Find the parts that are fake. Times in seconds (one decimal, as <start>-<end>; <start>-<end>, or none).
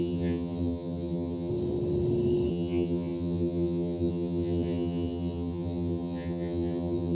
0.0-1.5; 2.5-7.1